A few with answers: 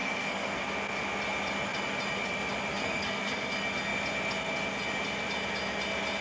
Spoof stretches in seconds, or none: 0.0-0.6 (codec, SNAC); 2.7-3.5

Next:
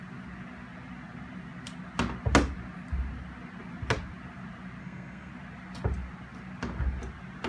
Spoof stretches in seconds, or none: 4.8-5.3 (codec, SNAC)

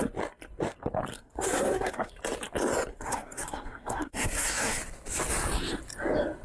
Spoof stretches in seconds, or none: 1.1-2.1 (codec, SNAC); 2.9-4.8

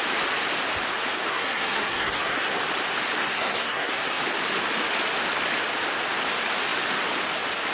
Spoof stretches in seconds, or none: 1.3-2.6 (codec, SNAC); 3.2-4.2

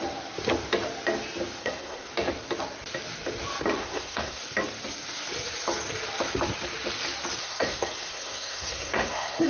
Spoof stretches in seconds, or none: 1.6-2.1 (codec, SNAC); 3.8-4.4; 7.4-9.5